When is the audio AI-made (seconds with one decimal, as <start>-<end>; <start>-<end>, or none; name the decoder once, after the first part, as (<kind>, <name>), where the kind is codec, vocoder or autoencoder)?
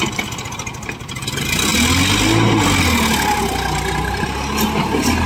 none